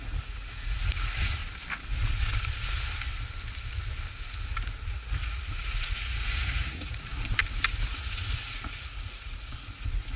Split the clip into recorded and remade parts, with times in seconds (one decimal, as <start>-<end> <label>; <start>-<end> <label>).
0.0-1.4 remade; 1.4-4.9 recorded; 4.9-7.1 remade; 7.1-7.9 recorded; 7.9-10.2 remade